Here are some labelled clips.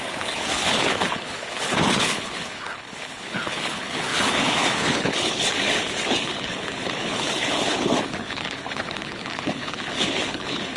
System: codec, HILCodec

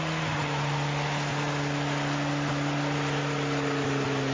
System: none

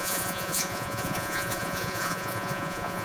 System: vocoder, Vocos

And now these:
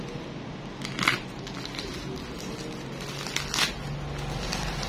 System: none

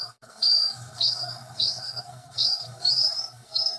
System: codec, SNAC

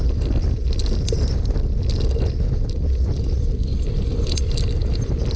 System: vocoder, BigVGAN v2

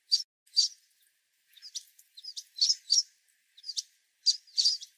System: none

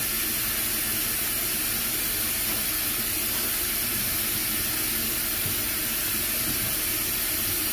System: none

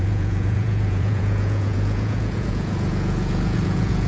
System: vocoder, Vocos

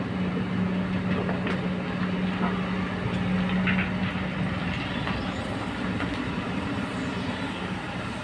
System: none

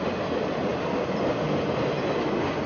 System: none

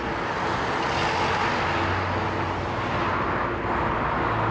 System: none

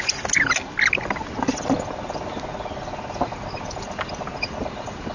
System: none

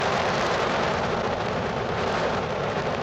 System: vocoder, BigVGAN v2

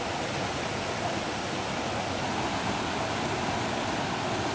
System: none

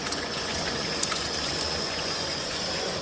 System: vocoder, Vocos